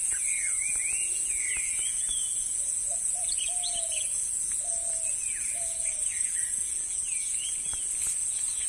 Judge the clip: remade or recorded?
remade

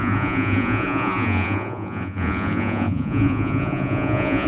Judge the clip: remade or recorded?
remade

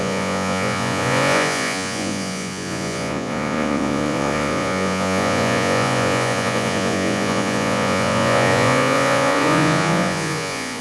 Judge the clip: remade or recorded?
remade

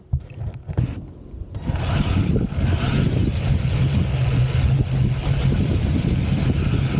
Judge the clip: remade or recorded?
recorded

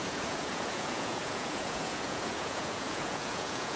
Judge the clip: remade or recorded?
remade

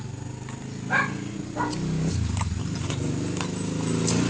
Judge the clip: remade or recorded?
recorded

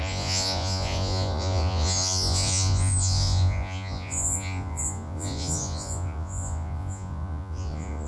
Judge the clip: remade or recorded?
remade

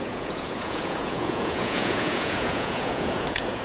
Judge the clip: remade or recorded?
remade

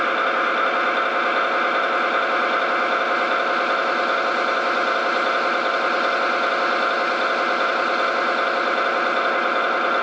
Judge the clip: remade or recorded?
recorded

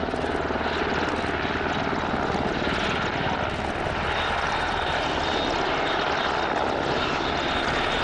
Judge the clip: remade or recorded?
recorded